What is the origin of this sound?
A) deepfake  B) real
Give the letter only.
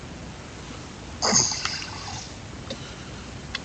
B